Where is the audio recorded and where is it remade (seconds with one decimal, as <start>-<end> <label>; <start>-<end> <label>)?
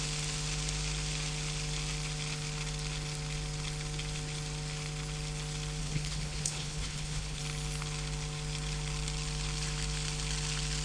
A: 0.0-5.8 recorded; 5.8-7.4 remade; 7.4-10.8 recorded